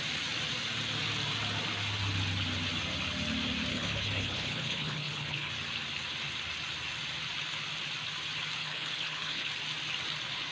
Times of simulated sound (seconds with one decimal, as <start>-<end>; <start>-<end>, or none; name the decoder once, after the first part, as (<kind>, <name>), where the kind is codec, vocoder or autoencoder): 3.7-5.5 (codec, HILCodec); 8.6-9.5